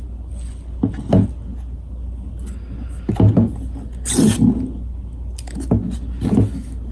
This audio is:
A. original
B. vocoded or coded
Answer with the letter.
A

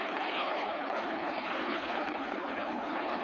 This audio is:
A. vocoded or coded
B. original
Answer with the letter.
A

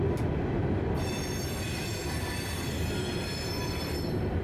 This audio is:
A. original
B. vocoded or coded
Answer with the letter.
A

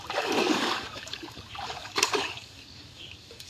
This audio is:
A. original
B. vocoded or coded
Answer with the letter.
B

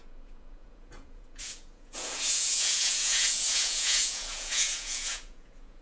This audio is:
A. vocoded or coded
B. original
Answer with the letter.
A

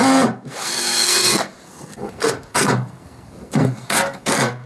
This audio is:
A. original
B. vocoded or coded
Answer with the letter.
B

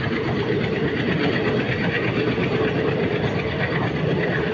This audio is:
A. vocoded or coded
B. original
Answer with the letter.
B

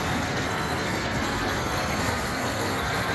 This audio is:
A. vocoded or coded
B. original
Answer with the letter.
A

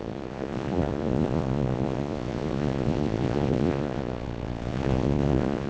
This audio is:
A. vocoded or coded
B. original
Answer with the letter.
A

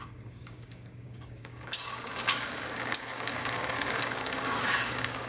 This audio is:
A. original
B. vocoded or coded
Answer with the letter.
B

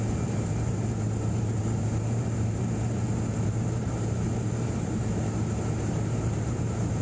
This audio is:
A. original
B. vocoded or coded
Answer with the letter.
B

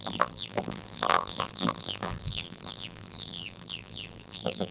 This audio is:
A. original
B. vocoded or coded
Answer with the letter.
B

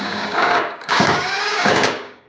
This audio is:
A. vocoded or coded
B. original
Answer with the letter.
A